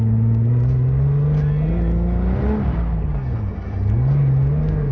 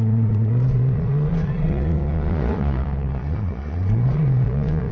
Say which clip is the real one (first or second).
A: first